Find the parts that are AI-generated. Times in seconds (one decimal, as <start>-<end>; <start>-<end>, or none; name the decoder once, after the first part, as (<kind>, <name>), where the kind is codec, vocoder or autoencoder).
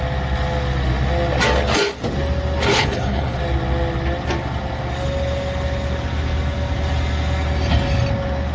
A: 2.7-3.4 (codec, HILCodec)